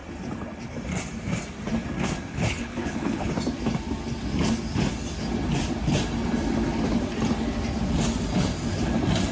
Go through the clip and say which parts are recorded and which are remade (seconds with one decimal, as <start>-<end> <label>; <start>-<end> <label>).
0.0-2.3 recorded; 2.3-3.3 remade; 3.3-9.3 recorded